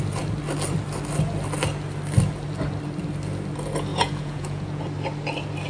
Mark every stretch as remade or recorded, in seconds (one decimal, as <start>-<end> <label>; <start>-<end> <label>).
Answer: 0.0-3.9 recorded; 3.9-4.8 remade; 4.8-5.7 recorded